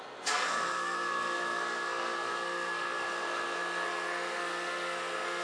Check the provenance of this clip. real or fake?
fake